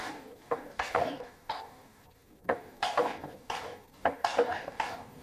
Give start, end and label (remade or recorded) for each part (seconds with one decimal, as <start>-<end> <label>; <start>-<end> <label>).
0.0-5.2 remade